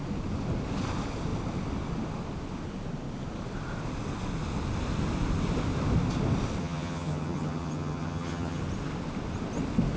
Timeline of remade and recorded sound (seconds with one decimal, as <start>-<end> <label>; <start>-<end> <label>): 0.0-6.6 recorded; 6.6-8.6 remade; 8.6-10.0 recorded